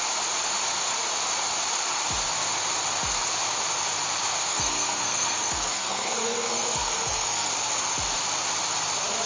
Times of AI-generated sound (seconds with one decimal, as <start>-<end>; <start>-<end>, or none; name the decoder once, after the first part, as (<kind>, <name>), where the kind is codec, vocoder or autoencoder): 4.5-7.5 (codec, SNAC)